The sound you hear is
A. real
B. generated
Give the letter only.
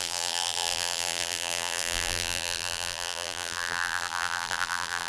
B